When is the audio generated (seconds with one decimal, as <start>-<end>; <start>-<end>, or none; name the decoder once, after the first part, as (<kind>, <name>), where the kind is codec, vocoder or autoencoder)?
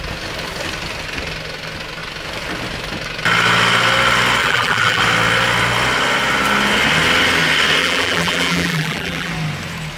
4.4-5.0 (vocoder, BigVGAN v2); 7.8-9.3